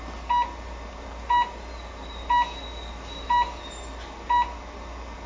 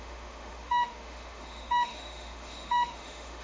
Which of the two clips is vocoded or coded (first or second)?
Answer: second